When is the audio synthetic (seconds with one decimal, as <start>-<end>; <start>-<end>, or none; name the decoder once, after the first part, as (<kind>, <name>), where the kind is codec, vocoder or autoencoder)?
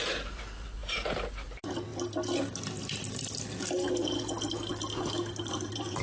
0.0-1.9 (vocoder, BigVGAN v2); 5.5-6.0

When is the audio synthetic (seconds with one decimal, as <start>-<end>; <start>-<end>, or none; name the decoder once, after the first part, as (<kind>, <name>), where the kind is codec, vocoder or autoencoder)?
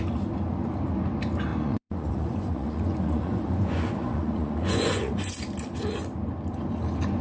1.5-5.3 (vocoder, Vocos)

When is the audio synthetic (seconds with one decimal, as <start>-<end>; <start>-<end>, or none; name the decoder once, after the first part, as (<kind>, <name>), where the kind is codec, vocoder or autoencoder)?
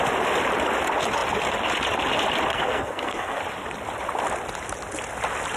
2.5-3.4 (codec, SNAC)